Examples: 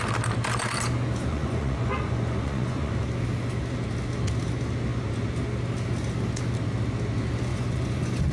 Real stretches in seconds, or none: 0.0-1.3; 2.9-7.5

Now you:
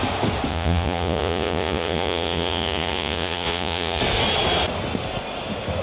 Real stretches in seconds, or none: 0.0-0.5; 4.0-5.8

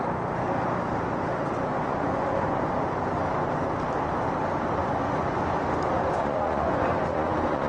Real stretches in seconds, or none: 0.0-1.7; 2.7-4.8; 5.4-6.0

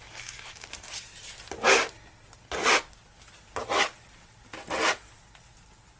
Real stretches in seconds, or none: 0.0-6.0

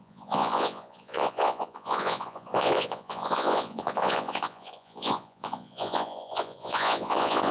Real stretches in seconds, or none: none

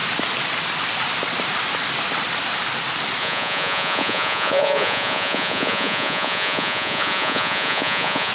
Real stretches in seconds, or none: 0.0-3.2

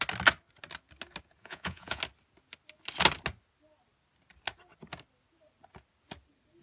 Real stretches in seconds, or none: 0.0-1.4; 2.0-6.6

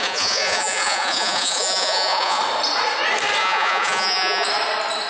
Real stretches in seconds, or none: 2.4-3.4; 4.5-5.1